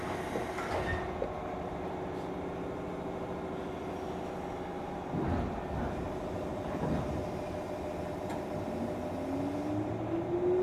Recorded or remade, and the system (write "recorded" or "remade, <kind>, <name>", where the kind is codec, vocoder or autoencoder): recorded